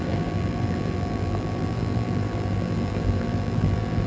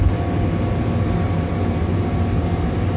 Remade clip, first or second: first